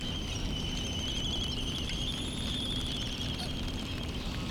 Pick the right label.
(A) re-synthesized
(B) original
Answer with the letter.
A